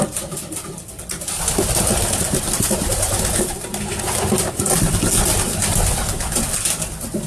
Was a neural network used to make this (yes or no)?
no